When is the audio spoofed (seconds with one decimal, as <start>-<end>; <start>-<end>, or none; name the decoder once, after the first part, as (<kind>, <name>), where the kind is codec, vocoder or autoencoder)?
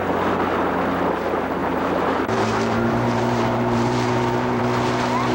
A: 1.6-4.6 (vocoder, BigVGAN v2)